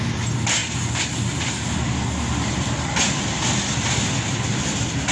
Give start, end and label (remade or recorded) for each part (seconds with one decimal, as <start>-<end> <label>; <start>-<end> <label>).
0.0-5.1 recorded